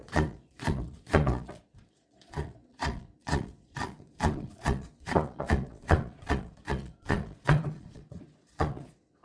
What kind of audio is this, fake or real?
fake